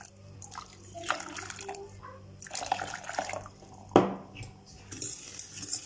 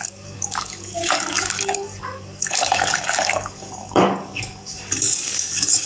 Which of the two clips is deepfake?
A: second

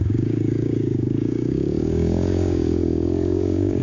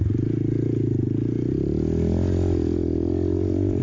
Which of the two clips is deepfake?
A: first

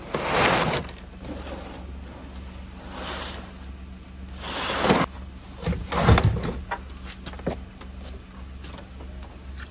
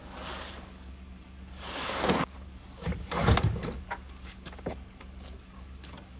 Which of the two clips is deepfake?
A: second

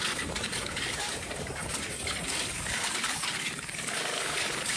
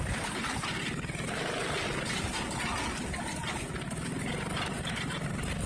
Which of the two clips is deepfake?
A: first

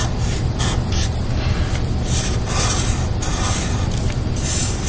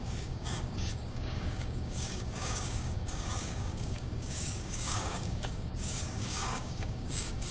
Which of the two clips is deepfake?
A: second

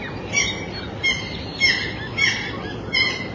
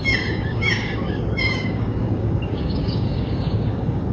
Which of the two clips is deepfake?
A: second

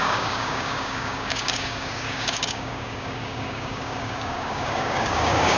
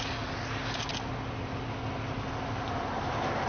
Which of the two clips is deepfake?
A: first